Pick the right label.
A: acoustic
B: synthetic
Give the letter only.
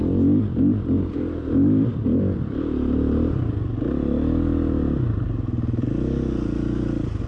A